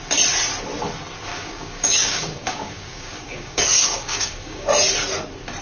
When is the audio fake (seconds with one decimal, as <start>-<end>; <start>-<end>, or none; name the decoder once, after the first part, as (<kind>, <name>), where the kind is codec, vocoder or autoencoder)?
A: 1.3-4.7 (codec, DAC)